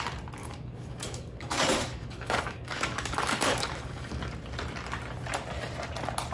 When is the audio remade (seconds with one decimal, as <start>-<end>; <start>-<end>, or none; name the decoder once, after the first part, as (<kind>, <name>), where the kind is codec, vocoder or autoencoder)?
0.4-4.2 (codec, DAC)